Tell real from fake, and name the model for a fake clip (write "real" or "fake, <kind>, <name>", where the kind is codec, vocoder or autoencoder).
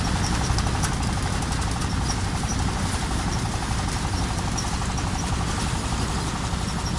real